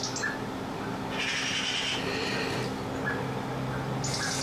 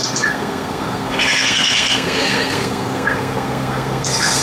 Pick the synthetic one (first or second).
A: second